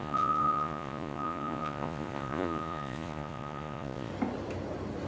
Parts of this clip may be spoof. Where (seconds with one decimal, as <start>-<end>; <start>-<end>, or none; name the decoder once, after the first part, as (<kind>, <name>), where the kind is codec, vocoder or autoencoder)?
0.0-4.1 (vocoder, Vocos)